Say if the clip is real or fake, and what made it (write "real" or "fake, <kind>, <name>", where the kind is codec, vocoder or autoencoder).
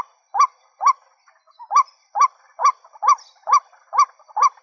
real